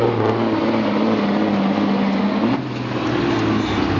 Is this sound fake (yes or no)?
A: no